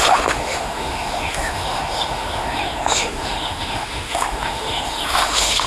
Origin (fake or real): fake